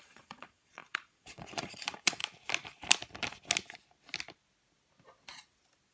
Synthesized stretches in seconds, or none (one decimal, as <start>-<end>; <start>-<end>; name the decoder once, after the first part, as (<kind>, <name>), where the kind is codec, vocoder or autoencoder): 0.0-2.2 (vocoder, Vocos)